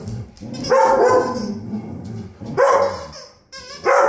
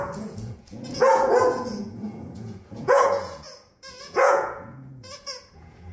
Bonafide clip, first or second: first